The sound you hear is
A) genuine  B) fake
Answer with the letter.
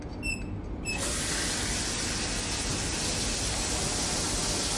A